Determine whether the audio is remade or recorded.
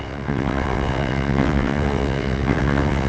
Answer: remade